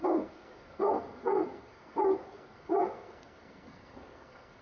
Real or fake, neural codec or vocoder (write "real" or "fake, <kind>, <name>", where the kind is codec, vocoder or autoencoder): fake, codec, SNAC